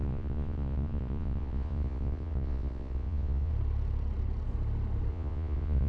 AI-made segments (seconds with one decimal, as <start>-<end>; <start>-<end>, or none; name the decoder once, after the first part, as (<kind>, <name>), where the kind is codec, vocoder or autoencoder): 0.0-3.5 (vocoder, Vocos); 5.1-5.9